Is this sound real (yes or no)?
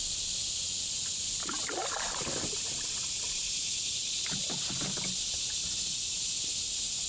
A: no